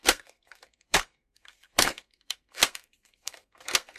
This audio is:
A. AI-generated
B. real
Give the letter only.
A